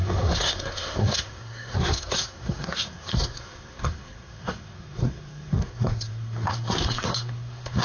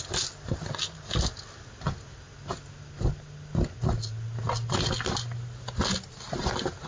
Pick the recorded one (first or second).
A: second